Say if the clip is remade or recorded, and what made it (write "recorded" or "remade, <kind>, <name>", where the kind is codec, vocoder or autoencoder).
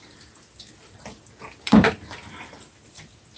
recorded